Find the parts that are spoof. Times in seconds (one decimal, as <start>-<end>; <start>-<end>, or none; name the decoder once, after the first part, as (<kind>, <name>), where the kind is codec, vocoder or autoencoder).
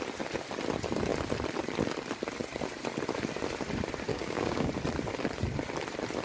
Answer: 4.1-4.7 (codec, DAC)